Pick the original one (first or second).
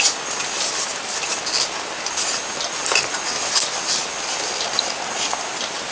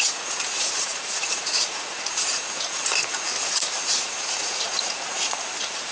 first